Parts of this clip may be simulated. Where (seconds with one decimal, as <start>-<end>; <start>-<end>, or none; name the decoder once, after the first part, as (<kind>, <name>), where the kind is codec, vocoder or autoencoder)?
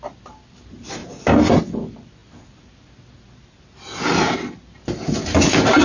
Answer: none